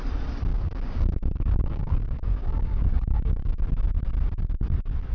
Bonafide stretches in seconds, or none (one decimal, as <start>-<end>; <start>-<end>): 0.0-0.5; 3.6-5.1